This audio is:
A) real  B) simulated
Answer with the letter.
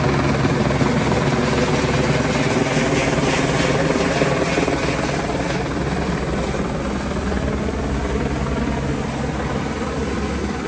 A